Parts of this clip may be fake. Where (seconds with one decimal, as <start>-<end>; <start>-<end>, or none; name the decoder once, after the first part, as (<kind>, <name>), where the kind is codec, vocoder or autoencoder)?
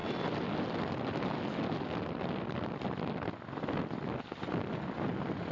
none